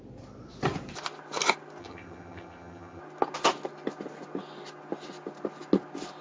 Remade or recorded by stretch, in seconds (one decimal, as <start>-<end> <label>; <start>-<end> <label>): 0.0-1.8 recorded; 1.8-3.0 remade; 3.0-6.2 recorded